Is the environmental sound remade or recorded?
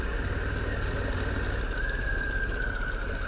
recorded